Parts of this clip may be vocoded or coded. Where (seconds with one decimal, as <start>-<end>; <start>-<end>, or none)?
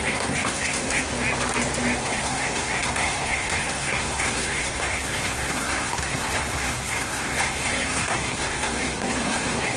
0.0-1.1; 2.0-9.8